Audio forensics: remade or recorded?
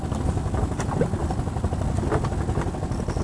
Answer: recorded